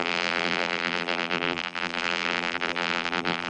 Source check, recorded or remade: remade